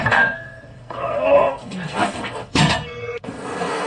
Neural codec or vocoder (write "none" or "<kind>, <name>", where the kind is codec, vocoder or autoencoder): codec, SNAC